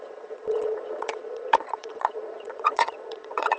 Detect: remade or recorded remade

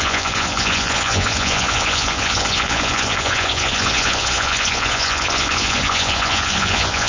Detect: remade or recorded remade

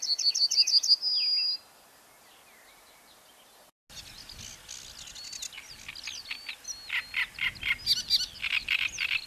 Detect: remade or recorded recorded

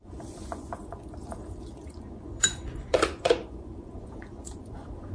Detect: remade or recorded remade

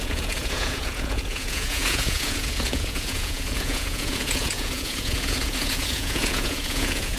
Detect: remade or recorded remade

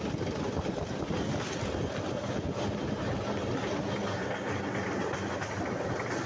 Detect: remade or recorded recorded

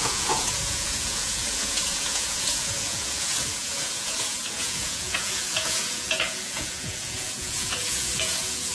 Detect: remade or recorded remade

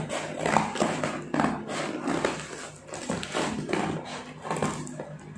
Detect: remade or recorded recorded